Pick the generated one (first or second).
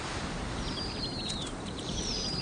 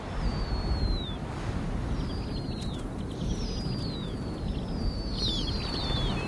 first